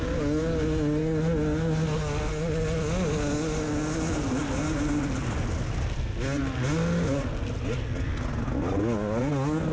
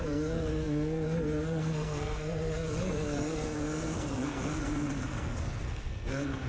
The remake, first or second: second